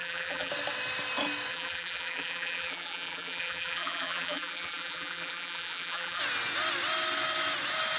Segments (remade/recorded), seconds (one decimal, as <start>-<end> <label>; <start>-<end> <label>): 0.0-0.5 remade; 0.5-1.5 recorded; 1.5-6.2 remade; 6.2-8.0 recorded